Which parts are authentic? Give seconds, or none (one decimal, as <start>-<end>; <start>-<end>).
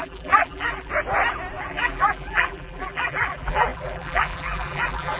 0.9-1.6